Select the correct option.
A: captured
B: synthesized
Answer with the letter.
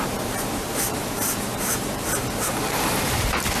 B